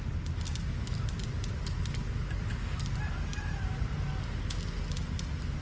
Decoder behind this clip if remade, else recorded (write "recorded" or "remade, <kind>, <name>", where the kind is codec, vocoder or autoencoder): recorded